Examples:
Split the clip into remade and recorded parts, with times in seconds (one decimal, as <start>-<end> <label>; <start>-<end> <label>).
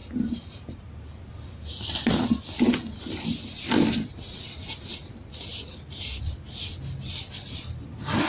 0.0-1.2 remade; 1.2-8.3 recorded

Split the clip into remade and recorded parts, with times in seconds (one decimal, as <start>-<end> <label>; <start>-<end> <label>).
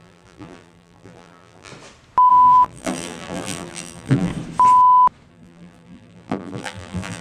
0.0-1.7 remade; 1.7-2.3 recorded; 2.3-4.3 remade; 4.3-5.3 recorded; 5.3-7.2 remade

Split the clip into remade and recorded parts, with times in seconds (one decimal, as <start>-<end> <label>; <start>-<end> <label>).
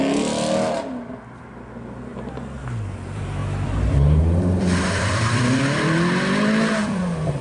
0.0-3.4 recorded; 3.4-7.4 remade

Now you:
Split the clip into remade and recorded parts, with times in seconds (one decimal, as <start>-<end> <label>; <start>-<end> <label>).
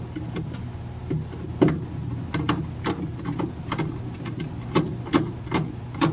0.0-6.1 recorded